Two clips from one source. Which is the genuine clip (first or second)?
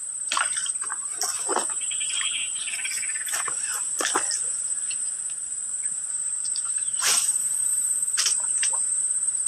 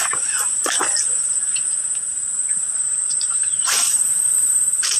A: second